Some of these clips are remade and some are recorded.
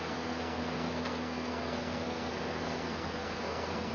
remade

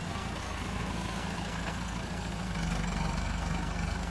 remade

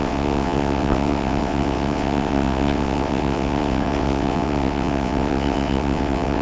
remade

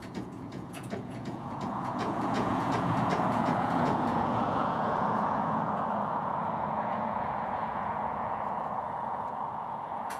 remade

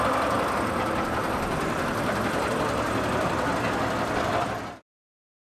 recorded